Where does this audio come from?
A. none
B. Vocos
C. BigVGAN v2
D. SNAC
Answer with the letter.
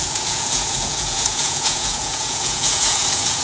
B